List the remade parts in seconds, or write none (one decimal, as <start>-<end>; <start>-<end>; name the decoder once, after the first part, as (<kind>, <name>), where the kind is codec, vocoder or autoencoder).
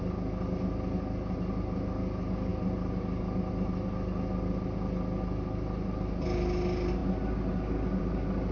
none